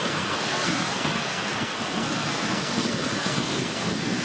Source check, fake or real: fake